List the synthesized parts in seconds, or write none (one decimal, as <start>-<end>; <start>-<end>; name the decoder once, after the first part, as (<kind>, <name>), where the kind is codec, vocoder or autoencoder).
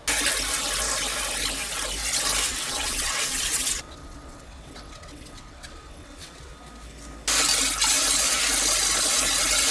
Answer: 2.5-6.5 (vocoder, WaveNeXt)